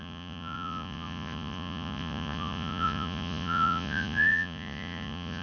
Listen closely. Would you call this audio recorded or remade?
remade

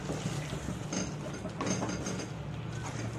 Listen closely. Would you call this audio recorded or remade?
recorded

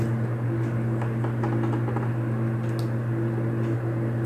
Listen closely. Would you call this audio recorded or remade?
recorded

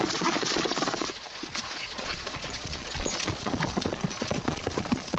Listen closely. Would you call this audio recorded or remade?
remade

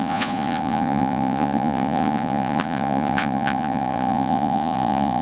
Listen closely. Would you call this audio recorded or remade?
remade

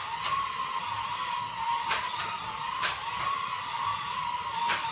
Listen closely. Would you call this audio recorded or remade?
recorded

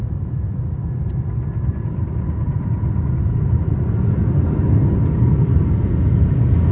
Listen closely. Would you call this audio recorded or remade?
recorded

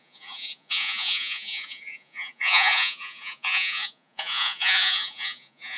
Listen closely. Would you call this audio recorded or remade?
remade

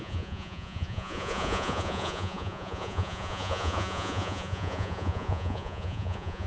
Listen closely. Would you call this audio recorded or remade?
remade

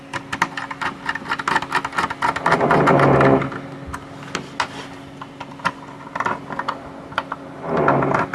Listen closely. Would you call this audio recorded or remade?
recorded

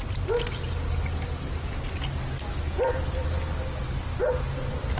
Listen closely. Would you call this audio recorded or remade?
recorded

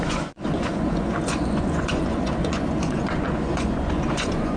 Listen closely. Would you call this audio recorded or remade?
remade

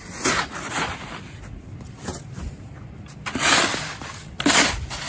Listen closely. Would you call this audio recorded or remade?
recorded